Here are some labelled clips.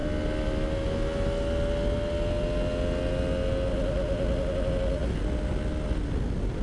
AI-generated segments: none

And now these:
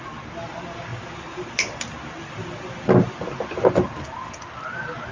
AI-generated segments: 0.9-3.1